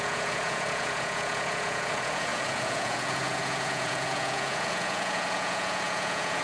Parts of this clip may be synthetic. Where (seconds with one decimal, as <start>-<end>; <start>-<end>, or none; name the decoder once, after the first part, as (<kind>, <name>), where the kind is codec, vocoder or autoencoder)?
0.0-6.4 (vocoder, Vocos)